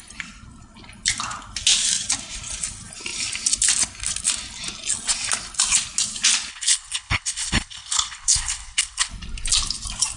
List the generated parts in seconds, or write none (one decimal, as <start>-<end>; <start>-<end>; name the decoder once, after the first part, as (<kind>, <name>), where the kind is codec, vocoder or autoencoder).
6.5-9.1 (codec, HILCodec)